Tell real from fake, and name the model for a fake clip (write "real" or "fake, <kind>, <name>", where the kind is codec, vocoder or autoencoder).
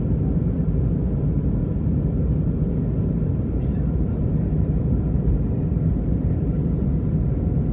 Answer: real